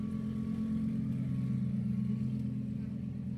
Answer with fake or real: real